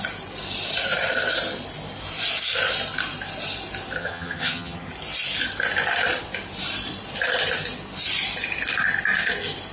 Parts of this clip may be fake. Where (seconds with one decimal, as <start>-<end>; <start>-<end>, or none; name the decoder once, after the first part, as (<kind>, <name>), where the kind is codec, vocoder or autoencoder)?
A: 4.0-4.9 (vocoder, HiFi-GAN)